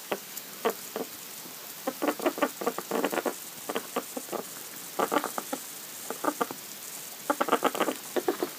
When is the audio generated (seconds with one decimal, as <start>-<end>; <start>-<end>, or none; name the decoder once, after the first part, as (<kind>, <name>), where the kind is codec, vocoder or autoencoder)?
0.0-0.5 (codec, DAC)